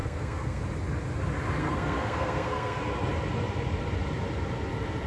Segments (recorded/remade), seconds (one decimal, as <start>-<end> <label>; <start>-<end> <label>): 0.0-0.6 remade; 0.6-1.6 recorded; 1.6-2.8 remade; 2.8-5.1 recorded